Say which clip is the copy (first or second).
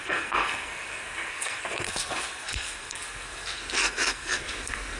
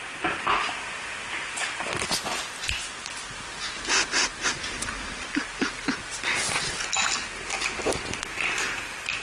first